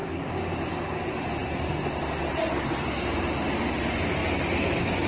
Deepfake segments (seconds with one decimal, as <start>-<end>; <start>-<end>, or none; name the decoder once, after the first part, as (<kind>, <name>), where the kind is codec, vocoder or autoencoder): none